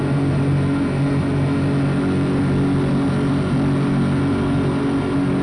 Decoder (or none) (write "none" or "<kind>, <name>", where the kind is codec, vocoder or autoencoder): none